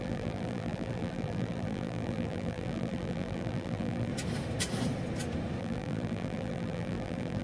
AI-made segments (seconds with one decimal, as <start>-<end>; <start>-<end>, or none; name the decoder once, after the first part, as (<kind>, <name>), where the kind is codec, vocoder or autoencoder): 0.0-4.1 (vocoder, BigVGAN v2); 5.6-7.4